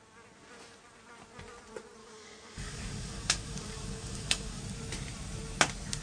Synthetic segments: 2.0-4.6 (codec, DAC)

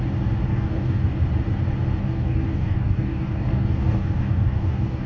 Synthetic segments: 0.5-1.0 (codec, DAC); 2.0-5.1

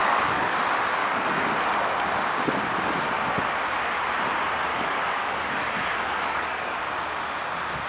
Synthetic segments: 0.0-0.6 (codec, DAC); 1.0-1.5; 4.7-6.8

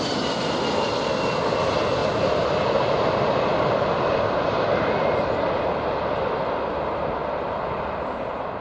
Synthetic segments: none